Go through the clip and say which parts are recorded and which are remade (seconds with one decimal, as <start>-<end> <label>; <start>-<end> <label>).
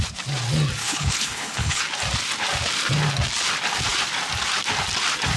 0.0-0.8 recorded; 0.8-1.8 remade; 1.8-5.4 recorded